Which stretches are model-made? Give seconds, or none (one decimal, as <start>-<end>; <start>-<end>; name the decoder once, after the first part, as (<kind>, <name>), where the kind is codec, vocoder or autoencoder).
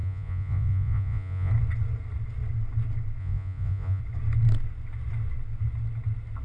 0.0-1.5 (vocoder, Vocos); 3.2-4.0